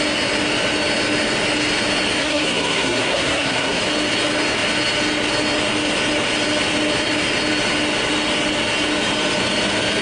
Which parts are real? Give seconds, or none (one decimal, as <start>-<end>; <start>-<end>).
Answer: 0.0-2.2; 3.8-10.0

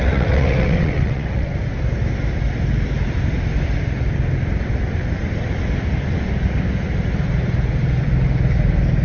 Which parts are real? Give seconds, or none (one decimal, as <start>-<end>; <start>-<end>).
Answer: 1.5-9.0

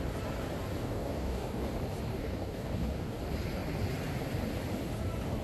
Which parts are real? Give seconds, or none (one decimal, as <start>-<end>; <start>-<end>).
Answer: 0.0-0.8; 1.7-2.1; 3.2-5.4

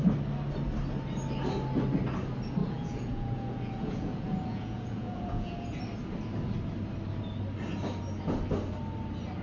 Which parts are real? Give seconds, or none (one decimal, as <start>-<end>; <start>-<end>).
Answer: 0.0-2.6; 5.8-9.4

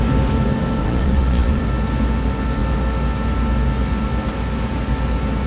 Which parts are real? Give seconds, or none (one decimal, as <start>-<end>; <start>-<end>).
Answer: 0.0-0.8; 1.6-5.5

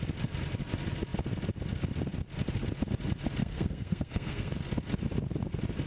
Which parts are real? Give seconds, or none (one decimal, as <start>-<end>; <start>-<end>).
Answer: 0.0-3.4; 4.5-5.9